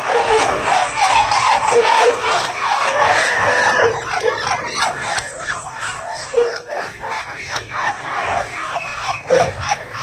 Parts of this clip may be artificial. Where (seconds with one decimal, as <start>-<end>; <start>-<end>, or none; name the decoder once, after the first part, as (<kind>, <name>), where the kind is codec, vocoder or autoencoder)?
0.0-3.6 (codec, DAC); 4.9-10.0